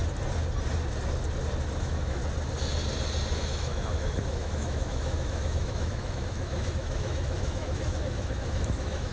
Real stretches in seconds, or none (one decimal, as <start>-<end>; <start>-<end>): 0.0-1.8; 2.2-3.3